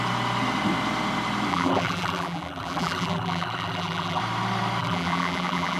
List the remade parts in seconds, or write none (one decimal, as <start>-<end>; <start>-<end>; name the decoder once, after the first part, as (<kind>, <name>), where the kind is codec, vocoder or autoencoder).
1.5-4.2 (vocoder, BigVGAN v2); 4.8-5.8